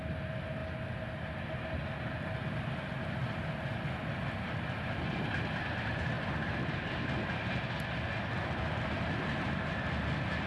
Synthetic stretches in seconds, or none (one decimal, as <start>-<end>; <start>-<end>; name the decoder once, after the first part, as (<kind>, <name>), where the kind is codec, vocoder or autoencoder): none